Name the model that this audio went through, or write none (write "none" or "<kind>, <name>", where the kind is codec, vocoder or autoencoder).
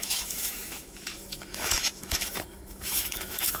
autoencoder, DAC-VAE